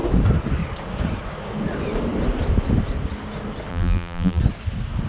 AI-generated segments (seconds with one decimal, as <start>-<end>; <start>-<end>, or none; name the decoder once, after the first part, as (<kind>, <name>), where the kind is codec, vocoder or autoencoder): 3.7-4.4 (vocoder, BigVGAN v2)

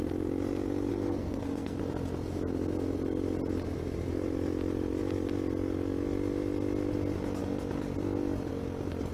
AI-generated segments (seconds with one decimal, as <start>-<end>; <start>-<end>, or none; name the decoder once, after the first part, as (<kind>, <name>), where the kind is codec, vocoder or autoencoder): 0.9-1.8 (codec, SNAC)

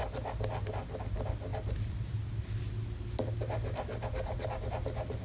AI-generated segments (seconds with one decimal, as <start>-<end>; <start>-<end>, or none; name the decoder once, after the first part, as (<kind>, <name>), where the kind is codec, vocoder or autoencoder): none

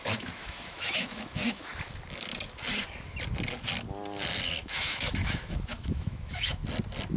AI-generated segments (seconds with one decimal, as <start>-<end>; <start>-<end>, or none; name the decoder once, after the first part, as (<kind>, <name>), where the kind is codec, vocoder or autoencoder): 0.0-1.7 (autoencoder, DAC-VAE); 4.6-6.6

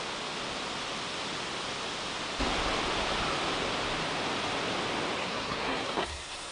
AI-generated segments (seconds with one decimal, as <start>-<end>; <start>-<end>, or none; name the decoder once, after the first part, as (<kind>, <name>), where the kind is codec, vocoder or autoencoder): 5.2-6.5 (codec, SNAC)

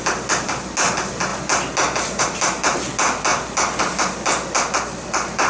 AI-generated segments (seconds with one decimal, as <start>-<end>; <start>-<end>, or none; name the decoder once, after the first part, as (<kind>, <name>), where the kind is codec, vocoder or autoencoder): none

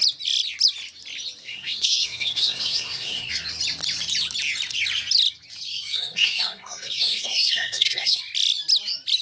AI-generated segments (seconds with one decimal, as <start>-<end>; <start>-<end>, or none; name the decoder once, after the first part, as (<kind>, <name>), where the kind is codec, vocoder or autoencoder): 1.4-3.3 (codec, SNAC); 5.7-8.2